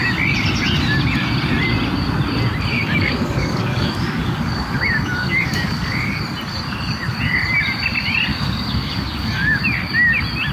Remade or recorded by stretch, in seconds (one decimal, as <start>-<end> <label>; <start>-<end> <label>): 0.0-2.7 recorded; 2.7-6.2 remade; 6.2-8.3 recorded; 8.3-9.6 remade; 9.6-10.5 recorded